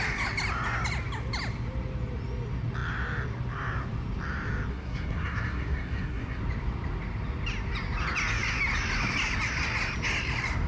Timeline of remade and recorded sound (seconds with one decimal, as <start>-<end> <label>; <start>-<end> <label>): 0.0-4.7 recorded; 4.7-6.4 remade; 6.4-10.7 recorded